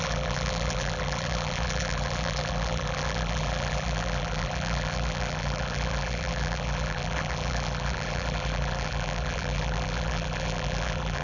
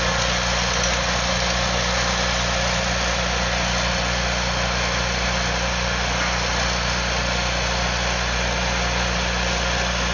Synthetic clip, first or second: first